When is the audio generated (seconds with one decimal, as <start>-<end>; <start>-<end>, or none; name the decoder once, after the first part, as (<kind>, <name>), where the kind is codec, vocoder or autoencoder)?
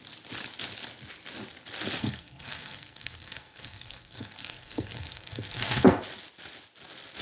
2.0-6.0 (codec, SNAC)